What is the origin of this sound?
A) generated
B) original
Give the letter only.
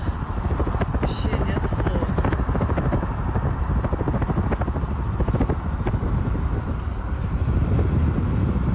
B